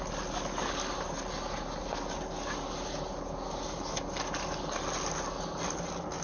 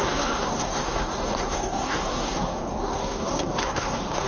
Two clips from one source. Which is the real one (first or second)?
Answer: first